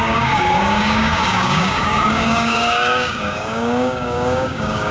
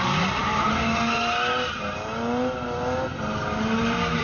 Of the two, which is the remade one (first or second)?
first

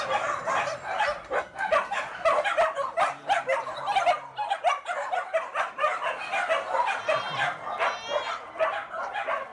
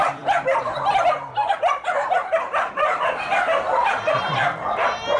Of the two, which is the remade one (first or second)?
second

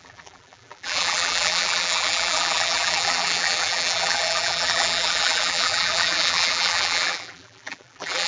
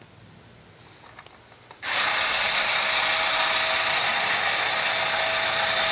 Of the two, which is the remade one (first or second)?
first